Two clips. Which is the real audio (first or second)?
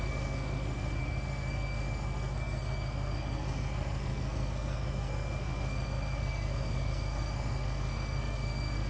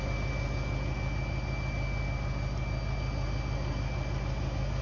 second